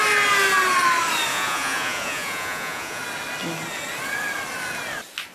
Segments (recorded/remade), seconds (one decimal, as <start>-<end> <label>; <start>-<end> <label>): 0.0-1.3 recorded; 1.3-3.0 remade; 3.0-5.3 recorded